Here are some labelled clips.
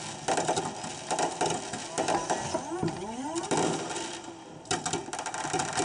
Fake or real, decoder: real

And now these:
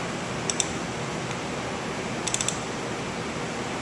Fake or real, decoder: real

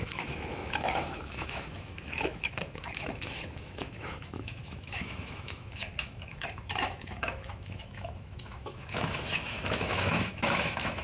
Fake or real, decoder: fake, autoencoder, DAC-VAE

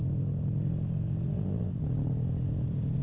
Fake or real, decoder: real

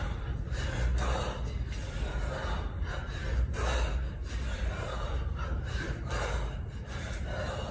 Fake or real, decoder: real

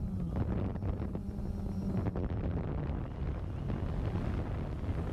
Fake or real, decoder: real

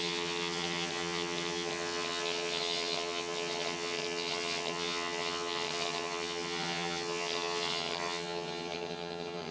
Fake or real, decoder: fake, vocoder, HiFi-GAN